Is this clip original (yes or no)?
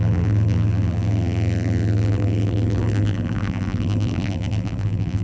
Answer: no